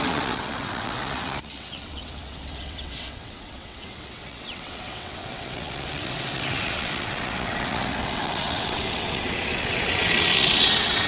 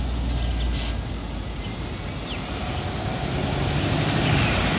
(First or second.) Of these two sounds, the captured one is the second